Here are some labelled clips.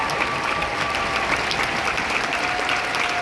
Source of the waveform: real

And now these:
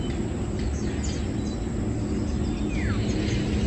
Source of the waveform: real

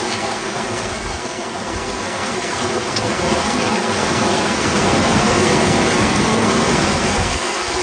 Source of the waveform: fake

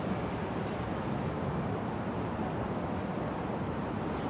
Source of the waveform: real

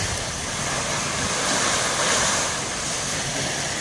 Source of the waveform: real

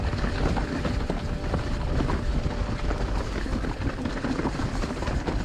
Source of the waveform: real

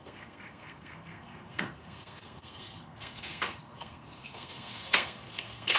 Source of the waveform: fake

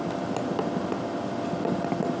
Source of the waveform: real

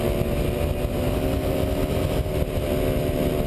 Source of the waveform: real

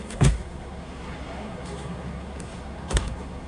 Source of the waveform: fake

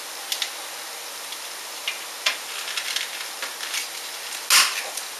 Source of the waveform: real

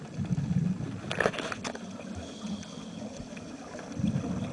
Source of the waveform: real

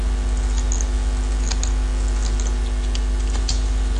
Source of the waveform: real